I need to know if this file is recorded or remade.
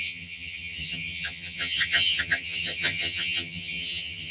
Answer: remade